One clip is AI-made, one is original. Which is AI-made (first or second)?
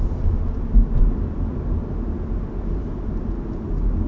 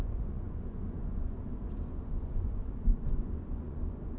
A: second